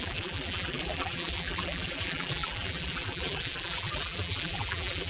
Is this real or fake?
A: fake